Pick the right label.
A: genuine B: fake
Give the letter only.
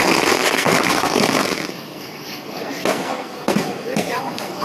B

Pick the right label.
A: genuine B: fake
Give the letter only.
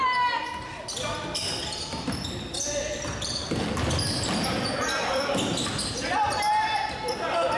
A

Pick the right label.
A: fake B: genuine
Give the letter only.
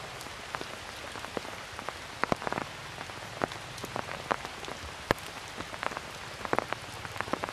B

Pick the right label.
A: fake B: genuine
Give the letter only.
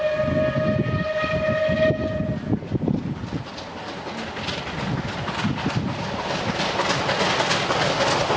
B